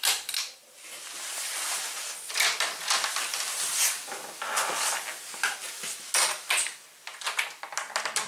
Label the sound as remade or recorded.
recorded